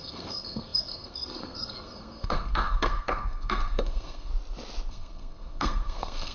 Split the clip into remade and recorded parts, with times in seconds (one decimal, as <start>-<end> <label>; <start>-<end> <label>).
0.0-4.3 remade; 4.3-4.9 recorded; 4.9-6.3 remade